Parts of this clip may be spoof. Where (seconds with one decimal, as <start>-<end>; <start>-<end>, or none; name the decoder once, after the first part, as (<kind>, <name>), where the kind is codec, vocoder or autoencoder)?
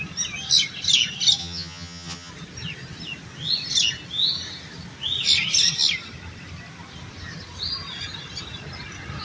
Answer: 1.4-2.3 (vocoder, HiFi-GAN)